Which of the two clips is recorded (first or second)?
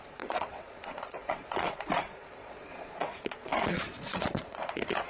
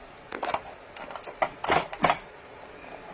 second